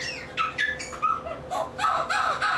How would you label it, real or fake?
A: real